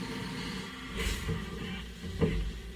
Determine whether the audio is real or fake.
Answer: real